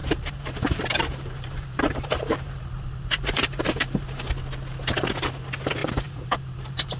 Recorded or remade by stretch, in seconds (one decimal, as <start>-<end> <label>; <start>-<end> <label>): 0.0-4.2 remade; 4.2-5.8 recorded; 5.8-7.0 remade